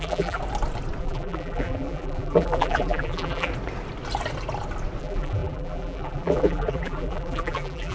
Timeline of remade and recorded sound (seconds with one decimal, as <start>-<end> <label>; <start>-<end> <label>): 0.0-0.4 remade; 0.4-1.0 recorded; 1.0-3.5 remade; 3.5-5.0 recorded; 5.0-7.9 remade